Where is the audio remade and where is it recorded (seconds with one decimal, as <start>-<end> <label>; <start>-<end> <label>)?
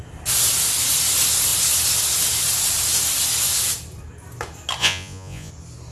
0.0-4.8 recorded; 4.8-5.5 remade; 5.5-5.9 recorded